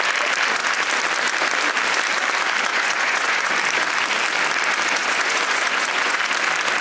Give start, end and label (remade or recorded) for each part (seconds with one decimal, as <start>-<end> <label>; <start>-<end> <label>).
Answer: 0.0-2.7 recorded; 2.7-3.5 remade; 3.5-5.0 recorded; 5.0-6.2 remade; 6.2-6.8 recorded